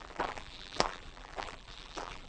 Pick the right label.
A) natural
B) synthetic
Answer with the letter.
B